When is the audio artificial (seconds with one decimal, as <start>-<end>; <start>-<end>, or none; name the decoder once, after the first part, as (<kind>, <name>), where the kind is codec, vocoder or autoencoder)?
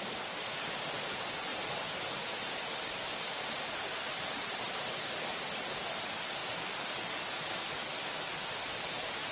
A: 1.5-5.7 (vocoder, BigVGAN v2)